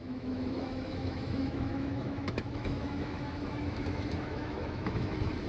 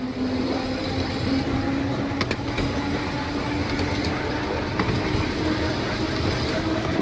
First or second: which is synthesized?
first